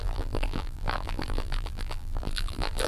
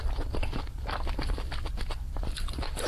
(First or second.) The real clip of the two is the second